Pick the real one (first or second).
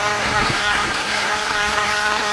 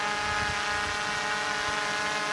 second